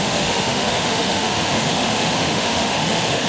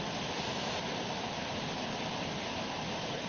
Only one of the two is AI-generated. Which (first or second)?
first